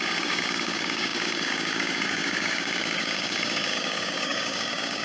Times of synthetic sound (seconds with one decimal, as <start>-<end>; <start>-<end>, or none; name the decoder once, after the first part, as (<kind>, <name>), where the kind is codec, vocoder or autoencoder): 0.0-5.0 (codec, DAC)